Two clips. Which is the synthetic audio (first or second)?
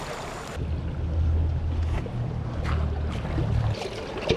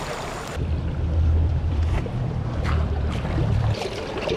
second